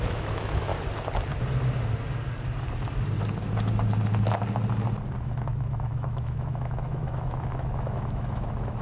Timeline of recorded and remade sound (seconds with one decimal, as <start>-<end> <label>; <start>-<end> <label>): 0.0-0.7 remade; 0.7-5.2 recorded; 5.2-8.8 remade